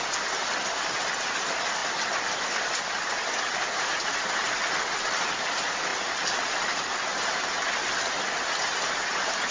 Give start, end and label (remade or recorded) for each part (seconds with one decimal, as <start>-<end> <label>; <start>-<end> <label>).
0.0-9.5 recorded